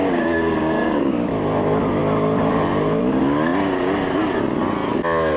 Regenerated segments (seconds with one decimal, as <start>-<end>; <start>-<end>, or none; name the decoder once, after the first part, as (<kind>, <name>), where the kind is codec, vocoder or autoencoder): 0.0-1.3 (codec, DAC)